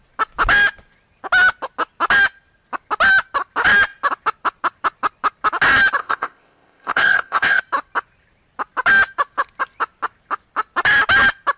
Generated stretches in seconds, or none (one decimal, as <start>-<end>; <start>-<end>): 6.0-7.6